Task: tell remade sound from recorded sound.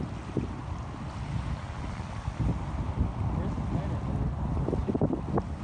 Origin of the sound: recorded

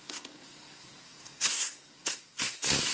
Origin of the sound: remade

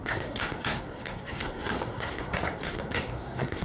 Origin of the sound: remade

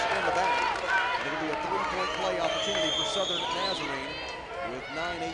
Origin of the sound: recorded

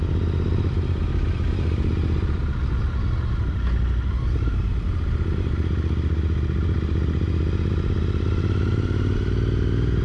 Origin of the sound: recorded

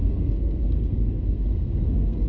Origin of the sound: remade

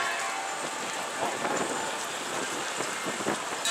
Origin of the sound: recorded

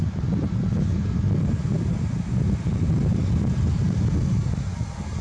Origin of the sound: recorded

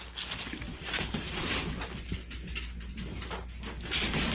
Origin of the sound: recorded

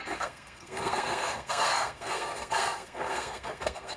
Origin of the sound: remade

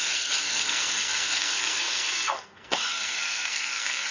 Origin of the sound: remade